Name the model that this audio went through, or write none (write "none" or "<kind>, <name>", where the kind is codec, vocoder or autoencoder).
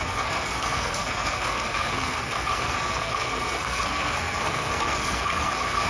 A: codec, SNAC